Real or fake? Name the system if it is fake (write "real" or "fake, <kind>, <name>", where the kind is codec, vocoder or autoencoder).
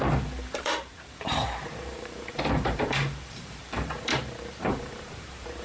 fake, vocoder, BigVGAN v2